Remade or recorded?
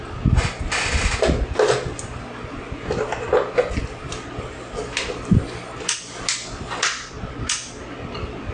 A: recorded